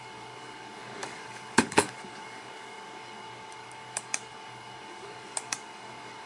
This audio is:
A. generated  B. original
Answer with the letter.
A